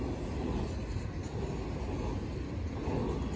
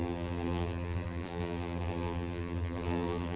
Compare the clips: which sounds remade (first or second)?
second